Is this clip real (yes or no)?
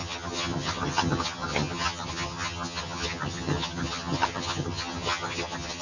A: no